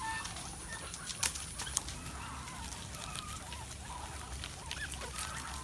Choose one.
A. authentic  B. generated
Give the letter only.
A